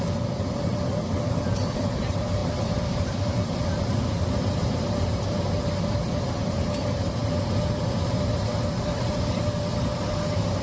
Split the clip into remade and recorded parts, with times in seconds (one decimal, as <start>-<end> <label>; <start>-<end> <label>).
0.0-10.6 recorded